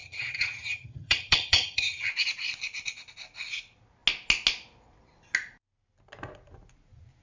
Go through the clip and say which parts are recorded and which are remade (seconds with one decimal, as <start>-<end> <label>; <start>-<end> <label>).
0.0-2.1 remade; 2.1-7.2 recorded